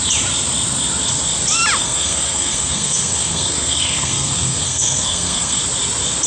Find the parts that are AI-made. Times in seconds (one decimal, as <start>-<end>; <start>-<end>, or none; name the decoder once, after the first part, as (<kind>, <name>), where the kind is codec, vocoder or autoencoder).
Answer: 1.8-5.6 (codec, SNAC)